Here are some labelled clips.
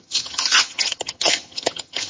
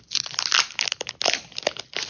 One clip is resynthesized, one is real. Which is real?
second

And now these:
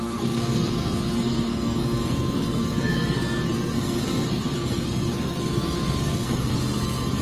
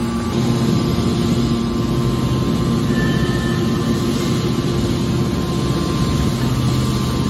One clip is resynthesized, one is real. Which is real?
second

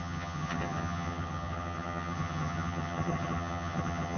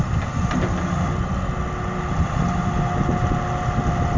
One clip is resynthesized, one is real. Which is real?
second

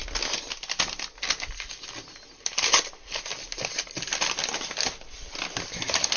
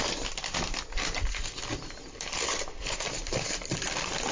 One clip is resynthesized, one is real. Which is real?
first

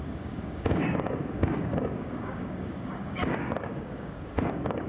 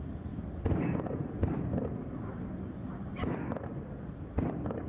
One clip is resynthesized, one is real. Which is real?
second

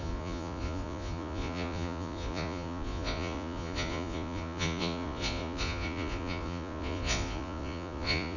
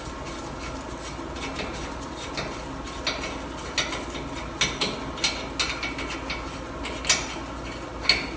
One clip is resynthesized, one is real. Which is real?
second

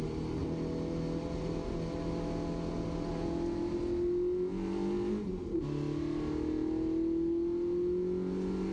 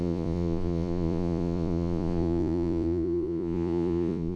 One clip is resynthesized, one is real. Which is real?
first